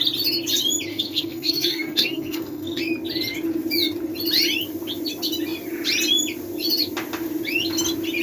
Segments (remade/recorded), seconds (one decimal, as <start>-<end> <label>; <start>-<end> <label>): 0.0-0.9 recorded; 0.9-2.8 remade; 2.8-8.2 recorded